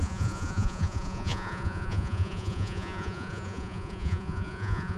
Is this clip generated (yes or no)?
yes